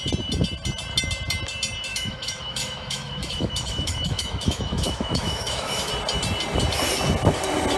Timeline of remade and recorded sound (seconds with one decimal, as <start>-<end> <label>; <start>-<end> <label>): 0.0-1.9 recorded; 1.9-5.9 remade; 5.9-7.8 recorded